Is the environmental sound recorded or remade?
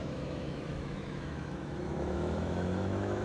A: remade